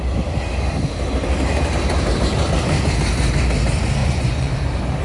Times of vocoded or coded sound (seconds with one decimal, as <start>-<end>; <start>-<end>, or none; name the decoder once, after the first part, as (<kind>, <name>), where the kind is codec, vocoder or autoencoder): 4.0-4.5 (vocoder, Vocos)